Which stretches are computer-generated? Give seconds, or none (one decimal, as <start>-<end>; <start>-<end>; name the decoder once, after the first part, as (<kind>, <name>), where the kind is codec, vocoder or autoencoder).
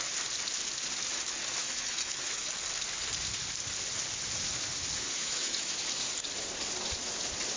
1.6-2.5 (autoencoder, DAC-VAE); 5.2-5.8